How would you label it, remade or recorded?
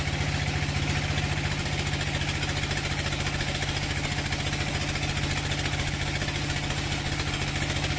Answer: recorded